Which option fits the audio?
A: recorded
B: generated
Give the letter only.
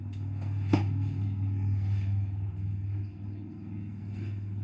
B